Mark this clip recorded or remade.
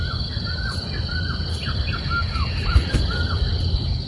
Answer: recorded